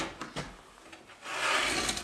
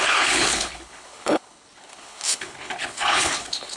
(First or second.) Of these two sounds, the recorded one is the first